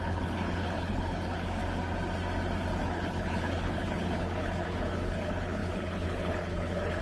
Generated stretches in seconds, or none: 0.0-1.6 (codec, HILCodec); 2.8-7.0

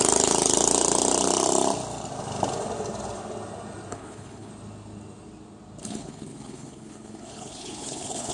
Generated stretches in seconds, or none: 3.9-4.5 (codec, HILCodec); 5.8-8.3

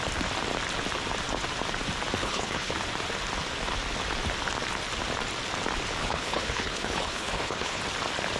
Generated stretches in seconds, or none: 2.2-2.7 (codec, HILCodec); 6.0-7.8

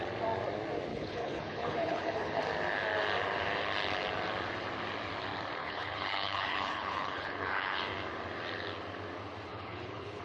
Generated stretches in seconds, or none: 0.9-2.4 (codec, HILCodec); 5.6-7.8; 9.5-10.2

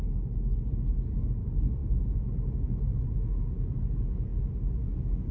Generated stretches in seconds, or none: none

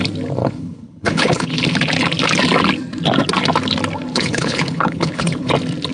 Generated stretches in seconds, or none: 0.4-1.6 (codec, HILCodec); 4.1-5.5